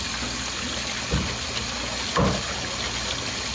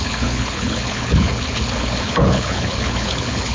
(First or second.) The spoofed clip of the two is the second